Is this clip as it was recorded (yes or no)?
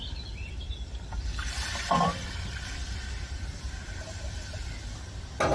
yes